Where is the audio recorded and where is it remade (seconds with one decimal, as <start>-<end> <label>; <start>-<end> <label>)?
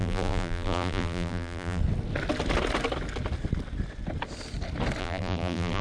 0.0-1.8 remade; 1.8-5.0 recorded; 5.0-5.8 remade